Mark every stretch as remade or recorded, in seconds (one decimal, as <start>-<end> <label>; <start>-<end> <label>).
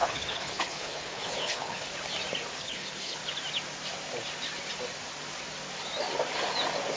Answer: 0.0-1.9 remade; 1.9-2.6 recorded; 2.6-3.2 remade; 3.2-7.0 recorded